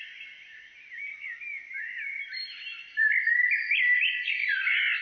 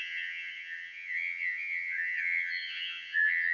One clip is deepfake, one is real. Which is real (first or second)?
first